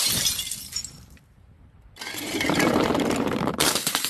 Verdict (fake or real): fake